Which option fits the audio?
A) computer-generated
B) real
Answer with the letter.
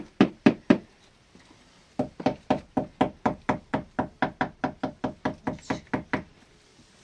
A